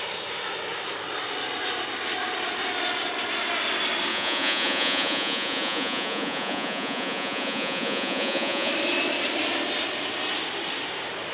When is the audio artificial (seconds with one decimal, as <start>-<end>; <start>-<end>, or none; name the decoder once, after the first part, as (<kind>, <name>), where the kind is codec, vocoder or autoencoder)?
4.1-8.7 (vocoder, Vocos)